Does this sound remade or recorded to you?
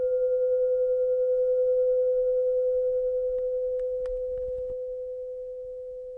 recorded